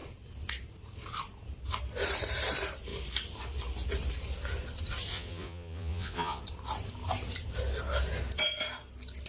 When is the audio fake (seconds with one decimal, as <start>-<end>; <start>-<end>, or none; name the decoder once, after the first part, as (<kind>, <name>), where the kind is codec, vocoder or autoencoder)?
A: 5.1-6.4 (vocoder, Vocos)